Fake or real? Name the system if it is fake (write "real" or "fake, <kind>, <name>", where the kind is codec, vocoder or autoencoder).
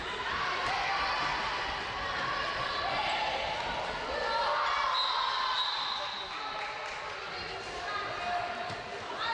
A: real